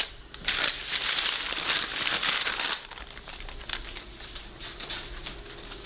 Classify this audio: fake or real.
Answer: real